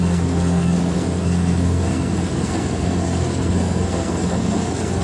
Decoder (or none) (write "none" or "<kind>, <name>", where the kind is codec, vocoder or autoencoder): codec, SNAC